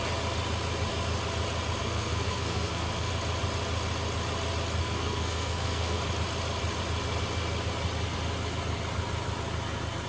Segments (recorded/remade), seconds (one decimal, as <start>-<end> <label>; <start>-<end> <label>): 0.0-1.8 recorded; 1.8-3.1 remade; 3.1-4.8 recorded; 4.8-6.0 remade; 6.0-10.1 recorded